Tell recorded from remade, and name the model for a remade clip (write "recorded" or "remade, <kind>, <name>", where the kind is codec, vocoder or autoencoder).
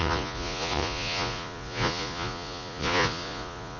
remade, vocoder, Vocos